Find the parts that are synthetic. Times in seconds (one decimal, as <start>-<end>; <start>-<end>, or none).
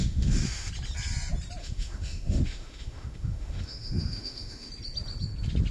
0.0-0.7; 1.6-4.7